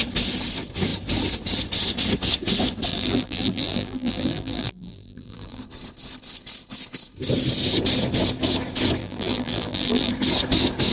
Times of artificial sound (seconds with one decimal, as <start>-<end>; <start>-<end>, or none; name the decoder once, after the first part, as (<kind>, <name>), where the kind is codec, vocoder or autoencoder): 2.9-5.6 (vocoder, BigVGAN v2); 9.0-10.1